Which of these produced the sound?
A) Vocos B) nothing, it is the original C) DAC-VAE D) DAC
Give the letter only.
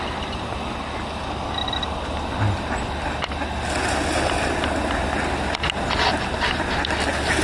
B